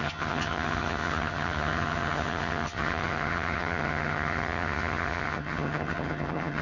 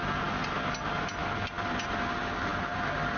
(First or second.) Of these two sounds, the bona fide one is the second